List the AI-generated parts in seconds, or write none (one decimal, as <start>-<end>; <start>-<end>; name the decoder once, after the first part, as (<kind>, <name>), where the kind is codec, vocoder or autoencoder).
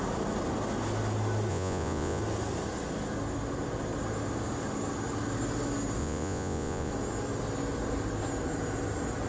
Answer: 1.5-2.2 (vocoder, Vocos); 6.0-6.9